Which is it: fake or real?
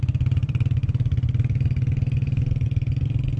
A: real